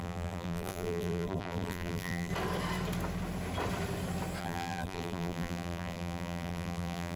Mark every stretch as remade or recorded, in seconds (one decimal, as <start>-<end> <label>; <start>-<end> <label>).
0.0-2.3 remade; 2.3-4.4 recorded; 4.4-7.2 remade